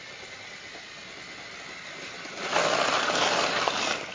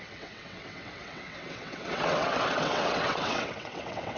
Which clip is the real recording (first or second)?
first